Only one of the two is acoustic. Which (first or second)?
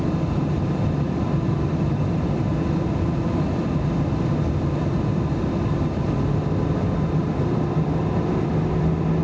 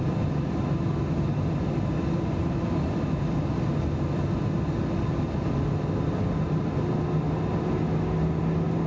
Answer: second